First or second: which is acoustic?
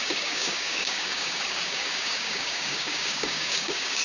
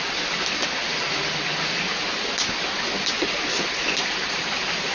second